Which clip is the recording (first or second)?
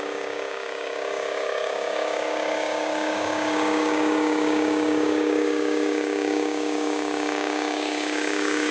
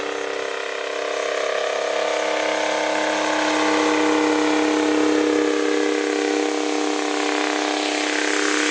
second